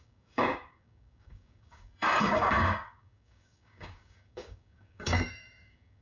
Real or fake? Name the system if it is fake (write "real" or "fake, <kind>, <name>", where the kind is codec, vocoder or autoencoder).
fake, codec, DAC